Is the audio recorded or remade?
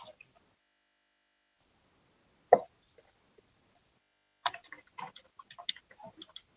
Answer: recorded